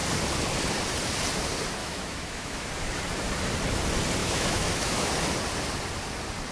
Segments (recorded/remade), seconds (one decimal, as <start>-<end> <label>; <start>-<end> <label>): 0.0-1.8 recorded; 1.8-2.7 remade; 2.7-4.2 recorded; 4.2-5.1 remade; 5.1-6.5 recorded